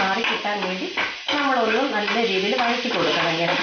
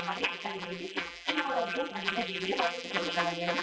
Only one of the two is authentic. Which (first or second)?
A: first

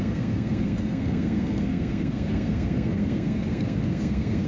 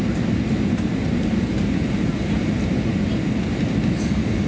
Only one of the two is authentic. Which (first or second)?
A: second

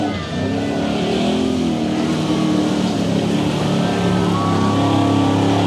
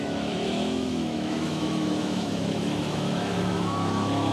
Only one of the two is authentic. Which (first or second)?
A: first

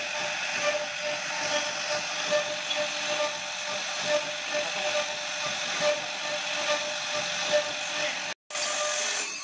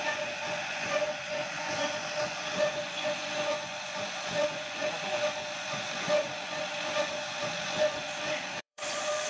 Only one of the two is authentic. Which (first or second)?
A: first